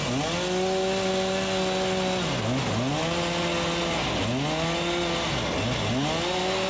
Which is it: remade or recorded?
recorded